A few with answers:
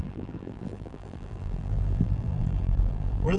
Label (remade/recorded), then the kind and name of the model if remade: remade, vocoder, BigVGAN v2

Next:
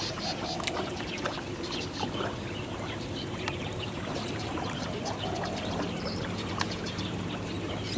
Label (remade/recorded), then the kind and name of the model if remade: remade, vocoder, BigVGAN v2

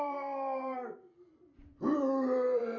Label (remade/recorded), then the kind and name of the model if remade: remade, vocoder, BigVGAN v2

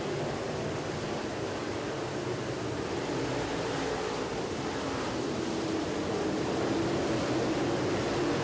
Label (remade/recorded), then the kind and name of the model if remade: remade, vocoder, BigVGAN v2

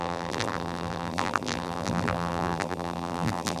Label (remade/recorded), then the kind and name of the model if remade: remade, vocoder, BigVGAN v2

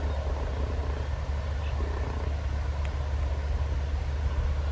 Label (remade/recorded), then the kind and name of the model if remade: recorded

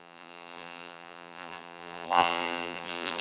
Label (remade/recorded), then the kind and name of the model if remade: remade, vocoder, BigVGAN v2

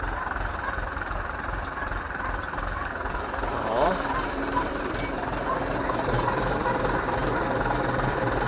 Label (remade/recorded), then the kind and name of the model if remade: remade, vocoder, BigVGAN v2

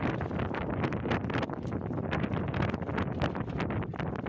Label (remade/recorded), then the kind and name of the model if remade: remade, vocoder, BigVGAN v2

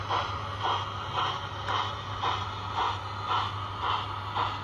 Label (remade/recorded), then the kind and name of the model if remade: recorded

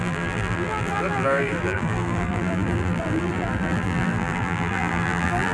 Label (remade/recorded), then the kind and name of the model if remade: remade, vocoder, BigVGAN v2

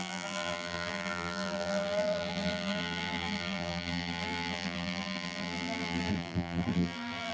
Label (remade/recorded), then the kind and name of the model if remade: remade, vocoder, BigVGAN v2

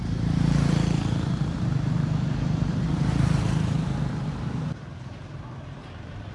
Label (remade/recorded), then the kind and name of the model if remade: remade, vocoder, BigVGAN v2